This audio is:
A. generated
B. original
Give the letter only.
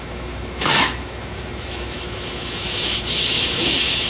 A